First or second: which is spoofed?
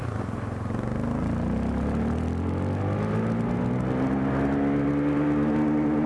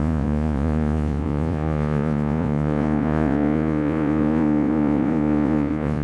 second